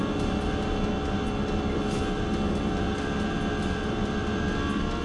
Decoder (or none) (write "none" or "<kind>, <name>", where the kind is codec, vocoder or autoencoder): none